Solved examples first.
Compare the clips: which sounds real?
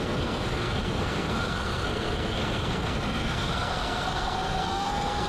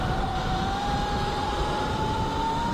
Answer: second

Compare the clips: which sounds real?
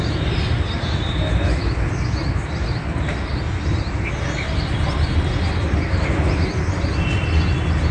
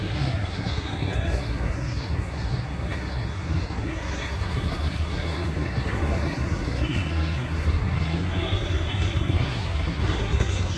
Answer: first